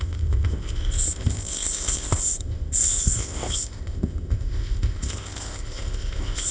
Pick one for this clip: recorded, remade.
remade